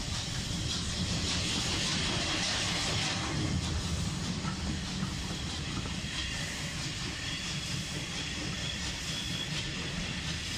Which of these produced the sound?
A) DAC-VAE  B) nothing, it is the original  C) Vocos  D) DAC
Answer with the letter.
B